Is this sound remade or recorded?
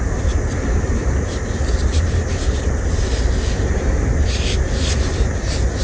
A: recorded